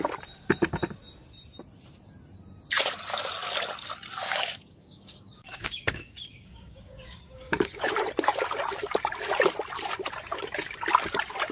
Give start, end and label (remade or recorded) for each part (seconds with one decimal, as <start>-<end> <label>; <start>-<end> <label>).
0.0-4.2 recorded; 4.2-7.9 remade; 7.9-11.5 recorded